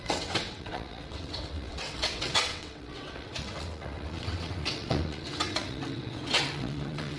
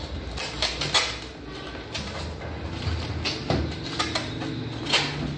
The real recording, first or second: second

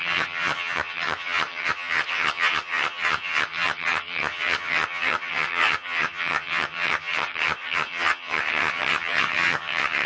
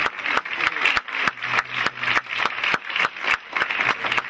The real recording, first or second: second